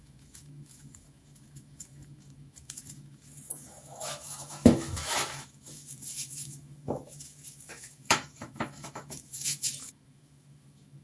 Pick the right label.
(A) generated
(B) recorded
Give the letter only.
A